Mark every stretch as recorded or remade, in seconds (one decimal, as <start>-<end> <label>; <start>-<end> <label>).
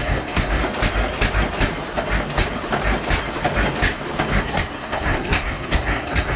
0.0-0.6 remade; 0.6-4.4 recorded; 4.4-6.4 remade